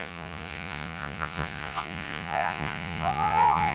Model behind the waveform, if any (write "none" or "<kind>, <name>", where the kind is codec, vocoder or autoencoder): vocoder, Vocos